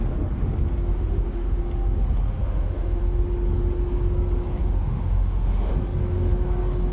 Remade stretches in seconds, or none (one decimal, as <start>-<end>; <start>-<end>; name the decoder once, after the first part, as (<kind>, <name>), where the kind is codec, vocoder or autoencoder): 0.9-1.6 (autoencoder, DAC-VAE); 2.4-3.0; 4.6-5.7